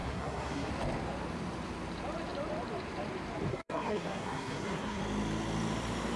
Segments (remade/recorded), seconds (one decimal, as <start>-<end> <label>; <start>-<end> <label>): 0.0-0.7 remade; 0.7-3.5 recorded; 3.5-5.0 remade; 5.0-6.2 recorded